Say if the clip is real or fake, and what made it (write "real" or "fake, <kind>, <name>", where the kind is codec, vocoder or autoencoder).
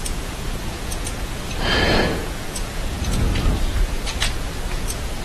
fake, vocoder, Vocos